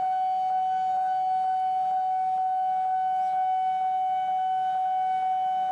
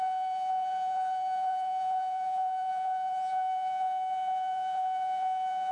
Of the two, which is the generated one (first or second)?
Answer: second